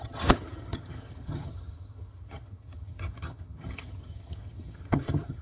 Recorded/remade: remade